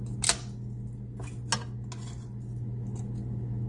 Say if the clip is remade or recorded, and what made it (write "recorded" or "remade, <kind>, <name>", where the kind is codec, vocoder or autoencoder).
recorded